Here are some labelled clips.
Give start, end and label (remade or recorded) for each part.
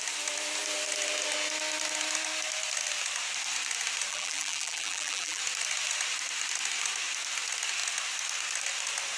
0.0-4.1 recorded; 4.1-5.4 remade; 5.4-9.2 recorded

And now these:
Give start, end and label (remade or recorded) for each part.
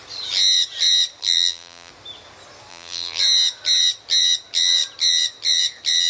0.0-1.2 recorded; 1.2-1.9 remade; 1.9-2.7 recorded; 2.7-3.2 remade; 3.2-6.1 recorded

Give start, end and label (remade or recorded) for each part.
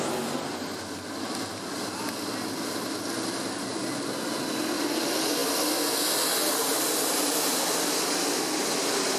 0.0-9.2 recorded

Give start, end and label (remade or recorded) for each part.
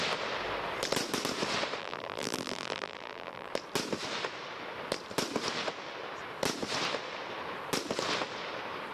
0.0-1.8 recorded; 1.8-3.5 remade; 3.5-8.9 recorded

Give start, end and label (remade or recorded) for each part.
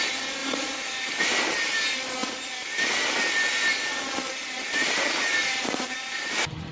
0.0-0.4 recorded; 0.4-1.2 remade; 1.2-4.3 recorded; 4.3-6.7 remade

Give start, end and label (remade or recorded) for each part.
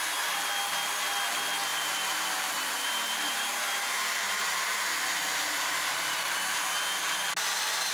0.0-1.7 recorded; 1.7-6.4 remade; 6.4-7.9 recorded